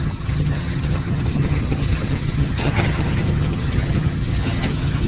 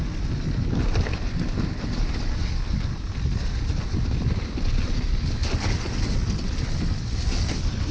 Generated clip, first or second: first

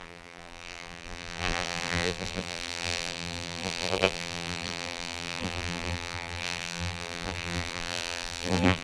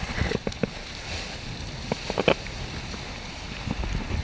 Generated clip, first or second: first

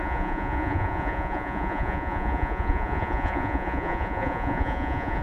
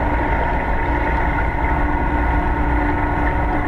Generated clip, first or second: first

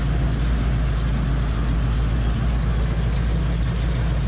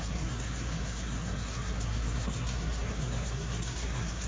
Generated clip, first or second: second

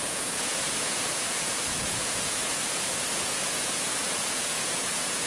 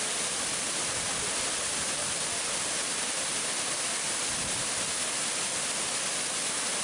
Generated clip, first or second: first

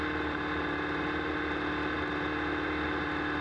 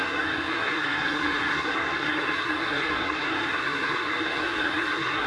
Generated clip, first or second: second